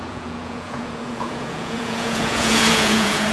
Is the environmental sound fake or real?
fake